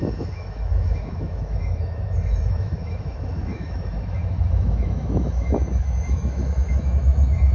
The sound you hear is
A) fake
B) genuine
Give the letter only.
A